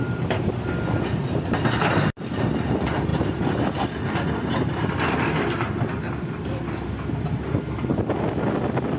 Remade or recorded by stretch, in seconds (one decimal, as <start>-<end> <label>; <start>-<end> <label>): 0.0-9.0 recorded